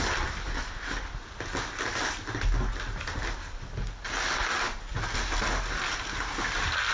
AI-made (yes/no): no